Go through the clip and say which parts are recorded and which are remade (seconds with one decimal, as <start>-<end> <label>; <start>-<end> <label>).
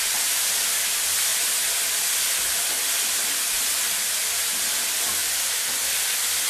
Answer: 0.0-5.2 recorded; 5.2-5.8 remade; 5.8-6.5 recorded